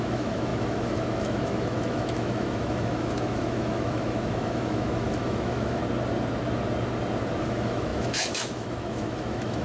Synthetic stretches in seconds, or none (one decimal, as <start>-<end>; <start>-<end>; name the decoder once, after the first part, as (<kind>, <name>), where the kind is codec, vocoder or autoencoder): 0.0-5.8 (autoencoder, DAC-VAE); 7.4-9.6